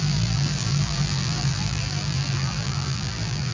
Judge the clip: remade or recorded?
remade